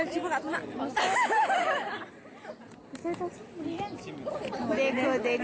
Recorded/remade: recorded